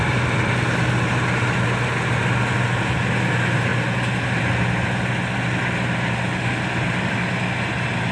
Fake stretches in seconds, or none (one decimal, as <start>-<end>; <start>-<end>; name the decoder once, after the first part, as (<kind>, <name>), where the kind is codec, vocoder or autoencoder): none